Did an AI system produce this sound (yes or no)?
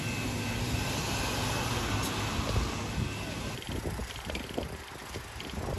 no